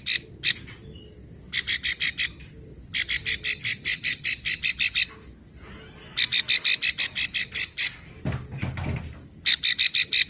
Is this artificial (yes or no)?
no